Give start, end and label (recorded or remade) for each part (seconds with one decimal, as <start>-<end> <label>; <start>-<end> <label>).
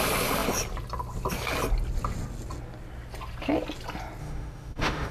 0.0-4.2 recorded; 4.2-5.1 remade